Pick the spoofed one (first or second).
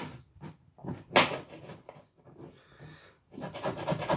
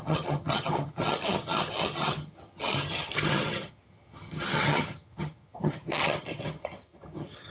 second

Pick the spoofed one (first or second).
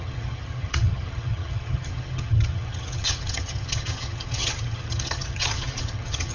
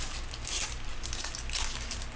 first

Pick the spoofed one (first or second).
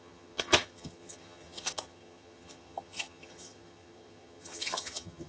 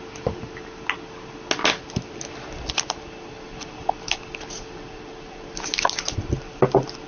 first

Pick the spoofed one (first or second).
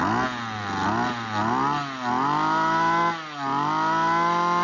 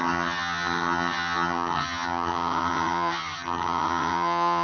second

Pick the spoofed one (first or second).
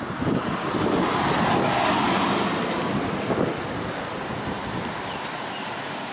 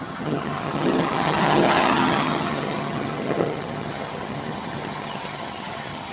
second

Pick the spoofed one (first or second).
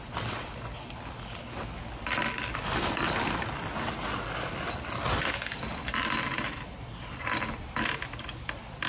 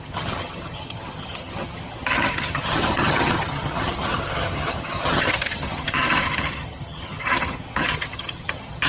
second